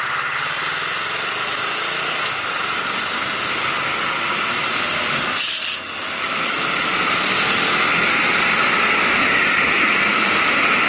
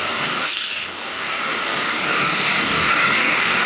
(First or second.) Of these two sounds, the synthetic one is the second